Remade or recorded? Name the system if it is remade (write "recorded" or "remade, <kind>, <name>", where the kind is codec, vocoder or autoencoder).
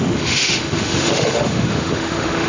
remade, autoencoder, DAC-VAE